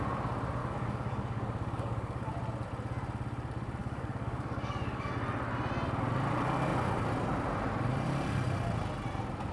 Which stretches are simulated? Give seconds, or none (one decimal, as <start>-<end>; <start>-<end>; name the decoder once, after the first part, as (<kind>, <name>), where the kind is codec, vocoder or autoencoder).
0.6-2.3 (codec, DAC); 3.8-5.1